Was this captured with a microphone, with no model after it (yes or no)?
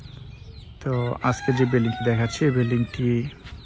yes